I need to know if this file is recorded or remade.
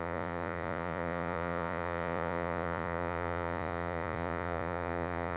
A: remade